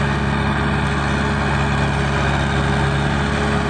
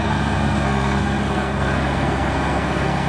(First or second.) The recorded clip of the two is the first